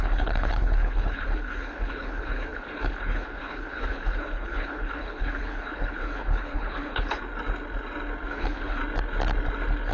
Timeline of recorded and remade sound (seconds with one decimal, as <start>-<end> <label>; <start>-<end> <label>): 0.0-7.2 remade; 7.2-8.3 recorded; 8.3-8.8 remade; 8.8-9.9 recorded